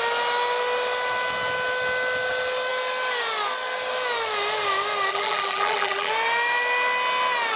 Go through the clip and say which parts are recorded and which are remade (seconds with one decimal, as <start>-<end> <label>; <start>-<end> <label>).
0.0-5.1 recorded; 5.1-6.1 remade; 6.1-7.6 recorded